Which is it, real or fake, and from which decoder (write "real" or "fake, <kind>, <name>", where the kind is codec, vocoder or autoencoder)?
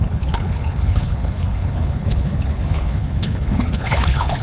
fake, codec, HILCodec